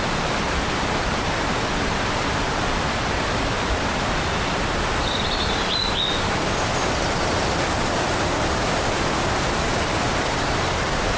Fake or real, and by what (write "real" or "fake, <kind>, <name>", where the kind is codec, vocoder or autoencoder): fake, vocoder, BigVGAN v2